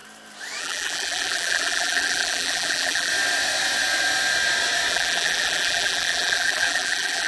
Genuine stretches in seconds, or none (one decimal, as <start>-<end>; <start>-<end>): 0.0-0.6; 3.1-4.9